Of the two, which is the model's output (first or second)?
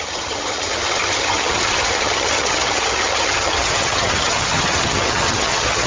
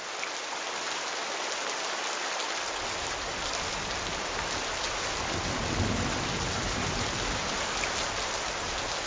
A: first